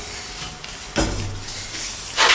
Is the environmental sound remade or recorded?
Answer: recorded